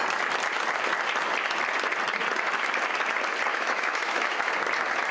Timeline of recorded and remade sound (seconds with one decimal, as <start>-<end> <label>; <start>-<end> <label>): 0.0-3.5 recorded; 3.5-4.5 remade; 4.5-5.1 recorded